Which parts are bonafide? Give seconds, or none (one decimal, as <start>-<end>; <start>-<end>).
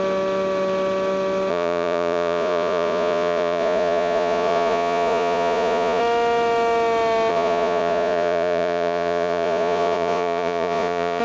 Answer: 0.0-1.5; 6.0-7.3